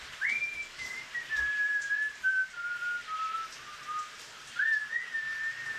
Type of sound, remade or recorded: recorded